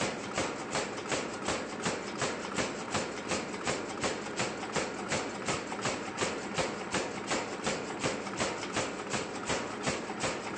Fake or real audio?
real